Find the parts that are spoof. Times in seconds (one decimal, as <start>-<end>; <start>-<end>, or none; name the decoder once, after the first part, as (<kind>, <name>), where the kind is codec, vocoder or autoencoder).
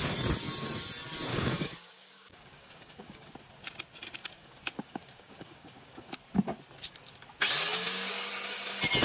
1.3-3.3 (codec, DAC); 4.2-6.1; 7.7-8.3